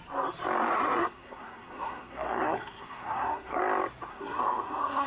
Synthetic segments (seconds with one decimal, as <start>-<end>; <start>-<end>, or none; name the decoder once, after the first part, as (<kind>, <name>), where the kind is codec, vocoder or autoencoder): 0.7-3.6 (codec, SNAC); 4.1-5.1